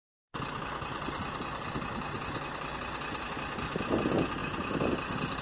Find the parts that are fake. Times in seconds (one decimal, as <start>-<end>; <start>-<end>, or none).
none